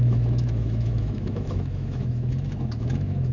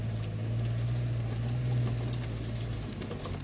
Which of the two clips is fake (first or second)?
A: first